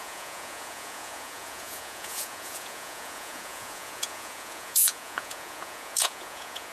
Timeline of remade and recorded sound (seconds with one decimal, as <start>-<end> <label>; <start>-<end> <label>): 0.0-6.7 remade